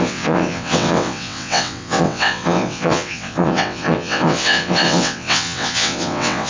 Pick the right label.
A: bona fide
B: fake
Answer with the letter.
B